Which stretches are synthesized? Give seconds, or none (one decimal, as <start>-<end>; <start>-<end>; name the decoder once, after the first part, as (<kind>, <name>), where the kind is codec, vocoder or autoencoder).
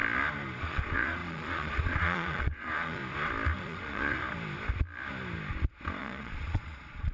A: 0.6-3.0 (vocoder, Vocos); 3.6-4.2; 6.0-7.1